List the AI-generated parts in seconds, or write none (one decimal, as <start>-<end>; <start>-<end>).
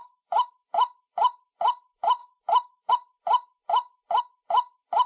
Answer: 0.0-0.5; 2.2-2.9